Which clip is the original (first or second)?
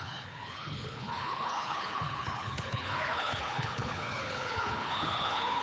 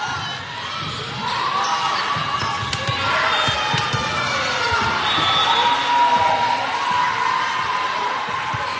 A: second